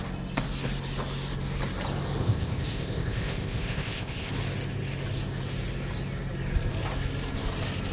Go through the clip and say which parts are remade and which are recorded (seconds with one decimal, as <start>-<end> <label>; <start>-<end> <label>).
0.0-2.2 recorded; 2.2-4.3 remade; 4.3-7.9 recorded